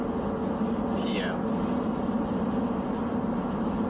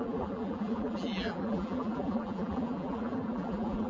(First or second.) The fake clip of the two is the second